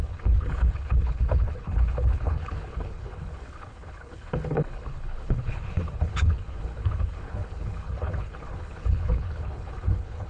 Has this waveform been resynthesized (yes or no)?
yes